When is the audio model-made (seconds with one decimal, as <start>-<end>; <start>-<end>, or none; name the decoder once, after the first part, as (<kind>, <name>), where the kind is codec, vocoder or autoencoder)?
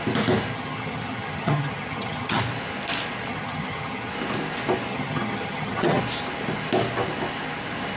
0.5-2.4 (vocoder, HiFi-GAN); 3.3-4.1; 4.9-6.0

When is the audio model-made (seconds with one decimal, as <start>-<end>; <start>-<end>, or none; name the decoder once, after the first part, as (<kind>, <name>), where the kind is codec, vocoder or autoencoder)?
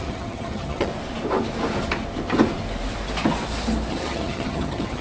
0.0-0.9 (vocoder, HiFi-GAN); 3.9-5.0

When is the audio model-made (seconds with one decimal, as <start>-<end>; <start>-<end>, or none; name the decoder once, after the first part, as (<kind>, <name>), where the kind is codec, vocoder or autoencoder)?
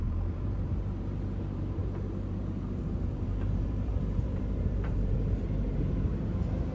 0.0-6.7 (vocoder, BigVGAN v2)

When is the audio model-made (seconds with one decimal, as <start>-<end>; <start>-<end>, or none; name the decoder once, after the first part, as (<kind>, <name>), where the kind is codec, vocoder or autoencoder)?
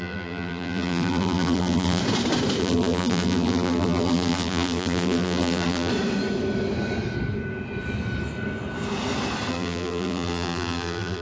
0.0-2.0 (vocoder, BigVGAN v2); 2.6-5.9; 9.5-11.2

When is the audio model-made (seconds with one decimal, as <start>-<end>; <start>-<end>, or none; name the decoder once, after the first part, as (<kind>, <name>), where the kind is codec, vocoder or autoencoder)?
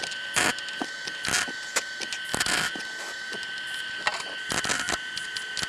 none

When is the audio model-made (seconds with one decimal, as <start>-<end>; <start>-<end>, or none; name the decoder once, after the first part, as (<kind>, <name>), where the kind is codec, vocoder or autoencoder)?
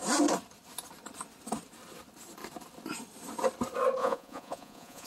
4.0-5.1 (vocoder, Vocos)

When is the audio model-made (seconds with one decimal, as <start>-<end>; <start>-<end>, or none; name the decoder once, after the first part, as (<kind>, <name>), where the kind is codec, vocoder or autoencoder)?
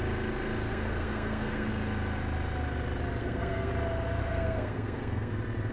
0.7-1.7 (codec, SNAC); 3.2-3.7; 4.2-5.3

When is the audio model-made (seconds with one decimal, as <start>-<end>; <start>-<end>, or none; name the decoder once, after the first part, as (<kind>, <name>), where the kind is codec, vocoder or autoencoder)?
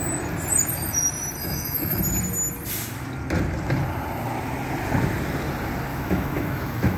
1.4-2.0 (autoencoder, DAC-VAE); 5.9-7.0